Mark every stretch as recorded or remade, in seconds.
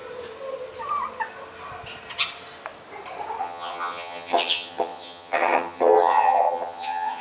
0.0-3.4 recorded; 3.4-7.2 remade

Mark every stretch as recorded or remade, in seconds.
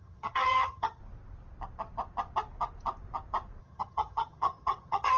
0.0-1.0 remade; 1.0-3.6 recorded; 3.6-5.2 remade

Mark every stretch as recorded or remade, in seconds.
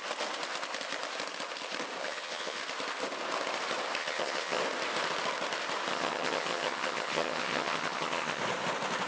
0.0-2.0 recorded; 2.0-2.6 remade; 2.6-4.0 recorded; 4.0-4.6 remade; 4.6-5.9 recorded; 5.9-8.4 remade; 8.4-9.1 recorded